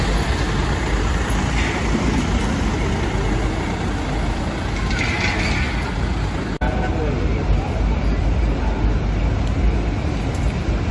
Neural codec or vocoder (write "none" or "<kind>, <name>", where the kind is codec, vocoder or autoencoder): none